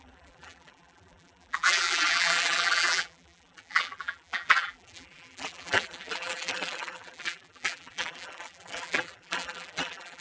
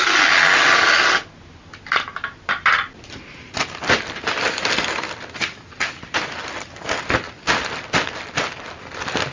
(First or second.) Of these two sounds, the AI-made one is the first